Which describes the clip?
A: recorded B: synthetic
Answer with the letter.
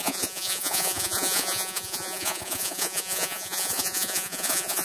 B